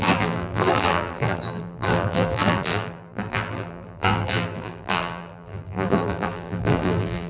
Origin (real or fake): fake